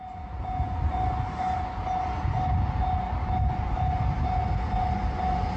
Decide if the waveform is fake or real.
real